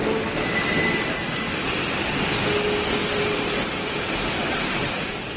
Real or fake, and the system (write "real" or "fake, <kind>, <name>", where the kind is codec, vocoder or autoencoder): real